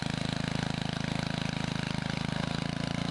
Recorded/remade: recorded